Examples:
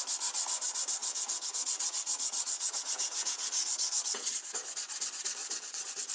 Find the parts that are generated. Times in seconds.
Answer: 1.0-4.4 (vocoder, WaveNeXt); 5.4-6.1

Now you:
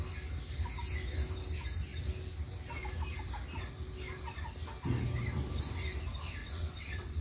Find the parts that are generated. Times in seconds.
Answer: 6.4-7.2 (vocoder, WaveNeXt)

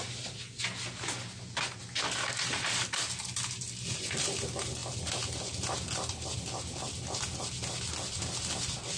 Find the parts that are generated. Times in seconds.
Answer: none